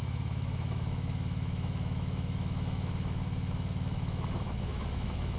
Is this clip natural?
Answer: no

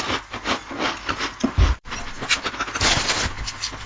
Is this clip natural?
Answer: yes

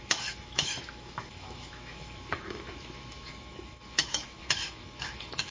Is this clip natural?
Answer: no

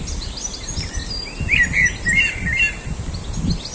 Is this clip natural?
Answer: yes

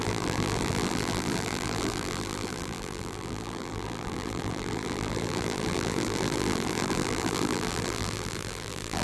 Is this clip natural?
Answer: no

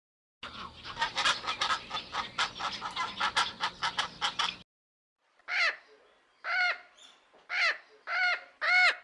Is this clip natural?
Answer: yes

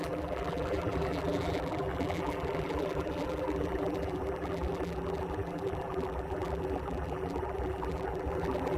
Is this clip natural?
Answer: no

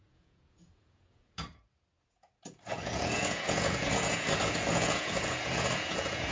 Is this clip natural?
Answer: no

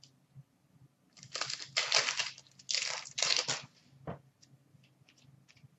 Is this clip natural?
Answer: yes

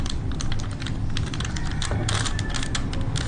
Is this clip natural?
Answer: yes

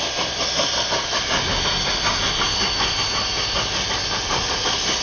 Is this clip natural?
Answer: yes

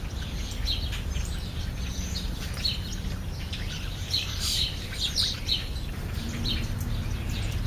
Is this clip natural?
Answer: no